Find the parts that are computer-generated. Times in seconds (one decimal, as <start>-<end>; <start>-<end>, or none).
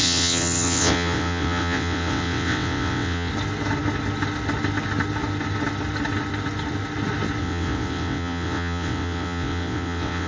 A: 0.0-3.3; 7.4-10.3